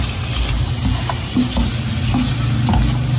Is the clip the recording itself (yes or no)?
yes